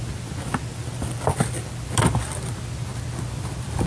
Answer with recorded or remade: recorded